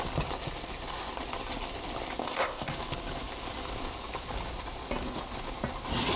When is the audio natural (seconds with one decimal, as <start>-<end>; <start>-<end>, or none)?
0.0-2.2; 2.7-6.2